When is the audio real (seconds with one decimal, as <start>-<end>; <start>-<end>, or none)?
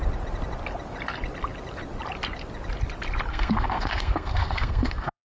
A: 0.0-3.3